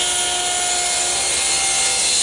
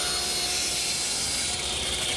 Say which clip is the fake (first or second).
second